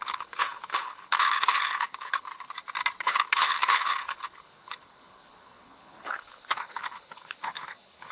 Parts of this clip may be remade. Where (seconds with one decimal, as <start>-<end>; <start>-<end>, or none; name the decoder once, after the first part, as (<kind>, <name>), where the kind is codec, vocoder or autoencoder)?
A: 0.0-2.3 (codec, HILCodec); 3.0-8.1